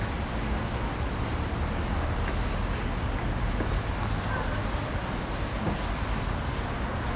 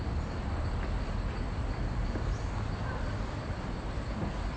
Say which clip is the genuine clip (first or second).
first